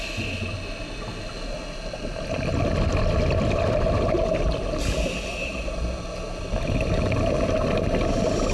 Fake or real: real